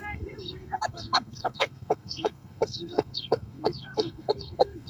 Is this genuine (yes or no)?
no